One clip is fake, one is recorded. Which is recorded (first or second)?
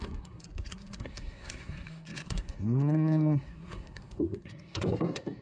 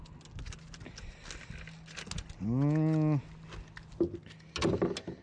second